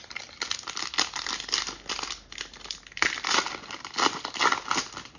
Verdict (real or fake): real